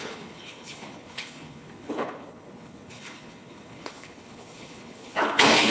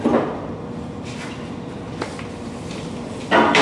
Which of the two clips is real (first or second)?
second